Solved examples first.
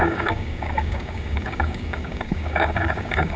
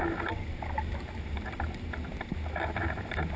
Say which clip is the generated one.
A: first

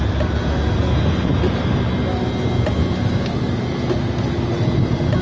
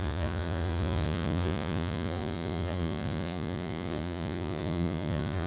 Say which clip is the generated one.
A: second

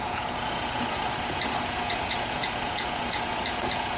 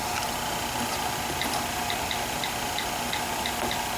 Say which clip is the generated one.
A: first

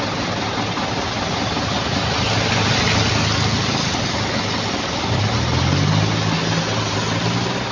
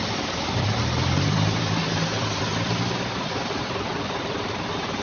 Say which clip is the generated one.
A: second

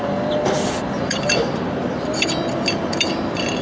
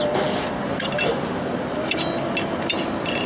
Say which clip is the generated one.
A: first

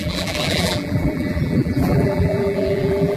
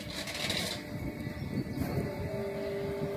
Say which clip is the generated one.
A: first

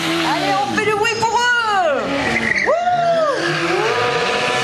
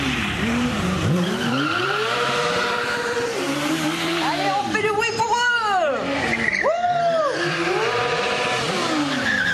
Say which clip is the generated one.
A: second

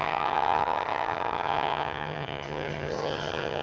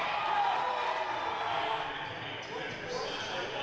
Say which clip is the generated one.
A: first